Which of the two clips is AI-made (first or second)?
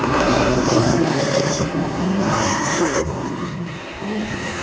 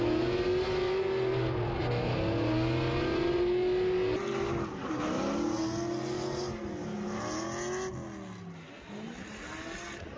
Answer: first